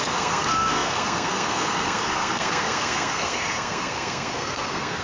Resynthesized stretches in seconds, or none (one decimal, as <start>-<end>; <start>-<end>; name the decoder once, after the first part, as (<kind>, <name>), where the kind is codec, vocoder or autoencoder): 0.0-5.0 (codec, SNAC)